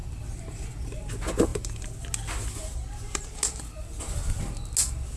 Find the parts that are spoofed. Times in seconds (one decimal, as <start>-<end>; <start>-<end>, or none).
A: none